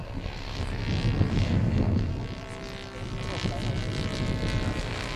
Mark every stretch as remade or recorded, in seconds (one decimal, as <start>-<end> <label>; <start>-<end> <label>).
0.0-0.8 remade; 0.8-1.3 recorded; 1.3-2.1 remade; 2.1-4.8 recorded; 4.8-5.2 remade